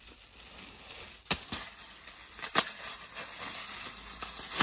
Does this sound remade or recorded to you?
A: recorded